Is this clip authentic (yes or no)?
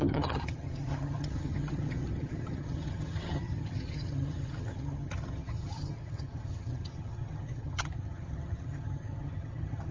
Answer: no